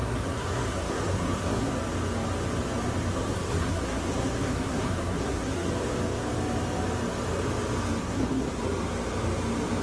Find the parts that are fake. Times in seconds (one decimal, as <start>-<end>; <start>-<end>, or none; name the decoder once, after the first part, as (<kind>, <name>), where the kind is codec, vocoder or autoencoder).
0.0-1.7 (codec, SNAC); 3.1-5.7; 8.0-8.6